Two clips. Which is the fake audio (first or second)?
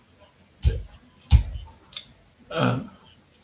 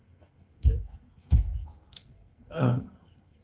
second